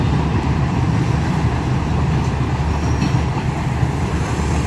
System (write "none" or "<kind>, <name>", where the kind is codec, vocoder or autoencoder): vocoder, BigVGAN v2